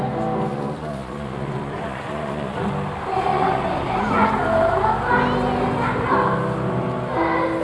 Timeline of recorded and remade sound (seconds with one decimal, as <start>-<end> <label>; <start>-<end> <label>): 0.0-0.5 recorded; 0.5-2.7 remade; 2.7-3.3 recorded; 3.3-4.3 remade; 4.3-7.6 recorded